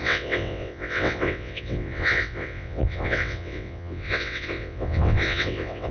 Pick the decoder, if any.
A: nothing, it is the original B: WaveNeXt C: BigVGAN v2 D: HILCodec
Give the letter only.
B